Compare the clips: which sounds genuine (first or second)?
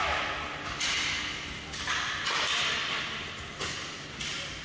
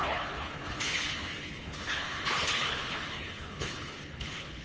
first